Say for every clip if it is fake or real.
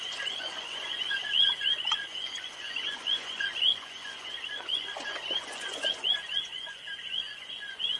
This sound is fake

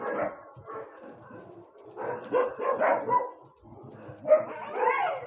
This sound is real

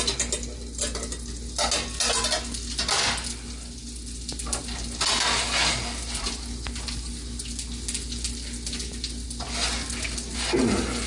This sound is real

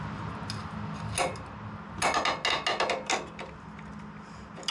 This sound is real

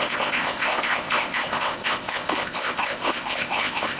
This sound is fake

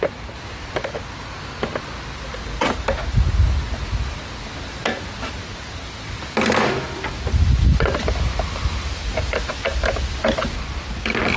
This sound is real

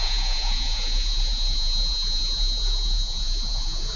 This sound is fake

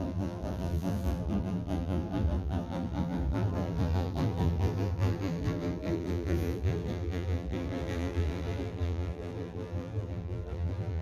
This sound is fake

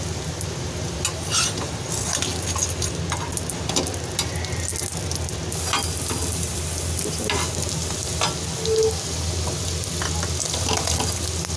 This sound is real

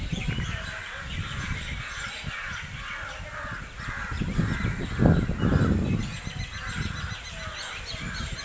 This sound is real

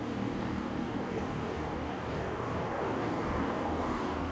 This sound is fake